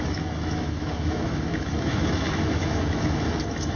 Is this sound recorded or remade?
remade